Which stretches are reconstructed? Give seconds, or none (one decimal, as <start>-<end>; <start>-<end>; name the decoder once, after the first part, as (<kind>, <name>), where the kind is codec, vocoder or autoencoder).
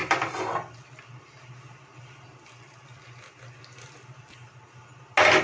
0.0-2.2 (vocoder, BigVGAN v2)